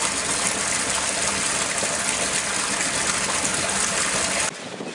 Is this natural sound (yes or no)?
yes